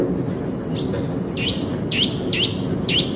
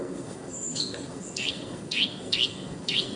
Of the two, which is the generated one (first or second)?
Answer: second